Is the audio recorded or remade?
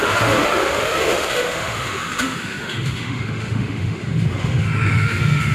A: remade